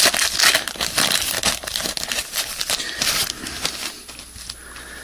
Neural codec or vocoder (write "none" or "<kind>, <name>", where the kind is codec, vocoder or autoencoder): none